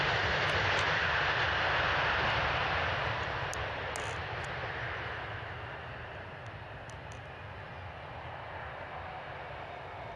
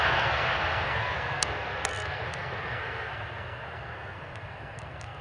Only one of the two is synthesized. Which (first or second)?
second